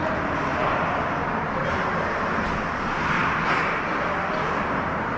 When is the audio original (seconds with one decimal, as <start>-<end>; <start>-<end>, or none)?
0.0-5.2